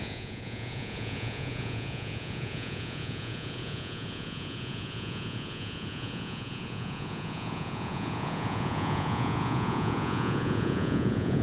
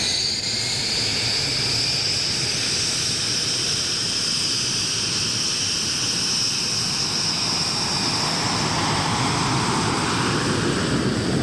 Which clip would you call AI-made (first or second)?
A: first